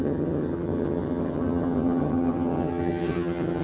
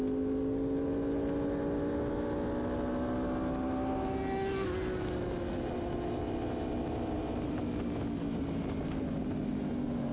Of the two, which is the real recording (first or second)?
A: second